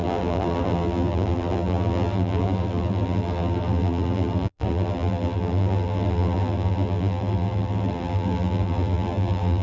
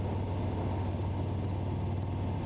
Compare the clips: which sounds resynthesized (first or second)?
first